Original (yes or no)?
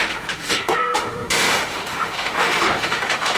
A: no